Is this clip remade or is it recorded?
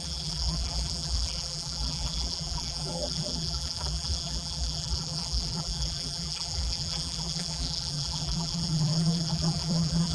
remade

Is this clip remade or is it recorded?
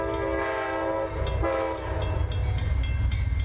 recorded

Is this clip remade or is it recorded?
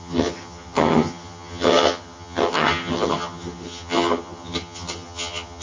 remade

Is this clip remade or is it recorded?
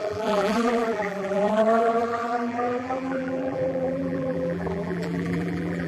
remade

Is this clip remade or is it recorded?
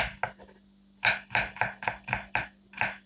recorded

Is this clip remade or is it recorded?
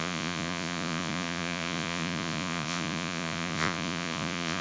remade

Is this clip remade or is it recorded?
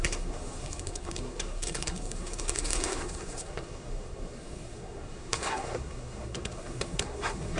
remade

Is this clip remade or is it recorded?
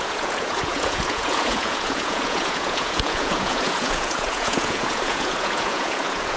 remade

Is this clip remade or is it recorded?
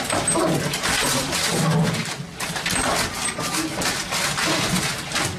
recorded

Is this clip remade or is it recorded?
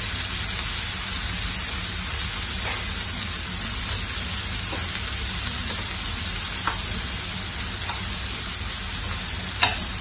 recorded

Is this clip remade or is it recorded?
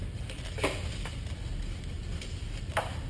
recorded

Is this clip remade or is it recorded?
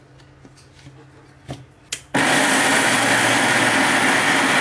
recorded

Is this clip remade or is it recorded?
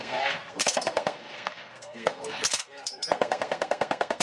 remade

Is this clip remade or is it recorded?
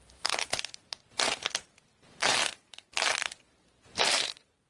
remade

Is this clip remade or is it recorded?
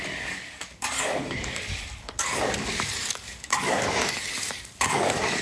remade